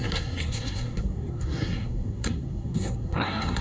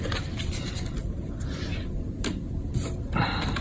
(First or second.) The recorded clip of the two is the second